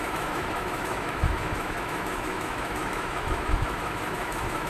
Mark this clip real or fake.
fake